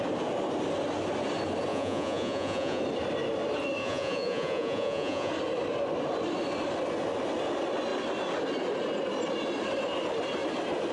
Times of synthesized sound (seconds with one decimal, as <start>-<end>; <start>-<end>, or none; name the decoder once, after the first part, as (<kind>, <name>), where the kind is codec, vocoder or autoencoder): 1.7-2.8 (vocoder, Vocos); 3.8-5.3